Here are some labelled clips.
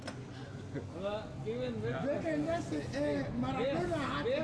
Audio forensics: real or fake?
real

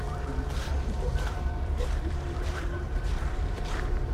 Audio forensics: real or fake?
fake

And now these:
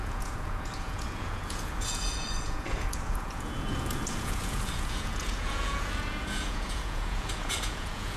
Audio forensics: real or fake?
fake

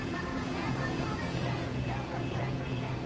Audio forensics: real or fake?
fake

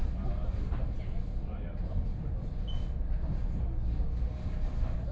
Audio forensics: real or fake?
real